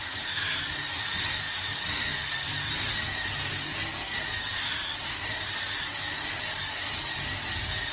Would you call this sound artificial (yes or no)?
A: no